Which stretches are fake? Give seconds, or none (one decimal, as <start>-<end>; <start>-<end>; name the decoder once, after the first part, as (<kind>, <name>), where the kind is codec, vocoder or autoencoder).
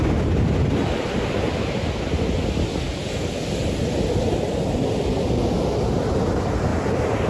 none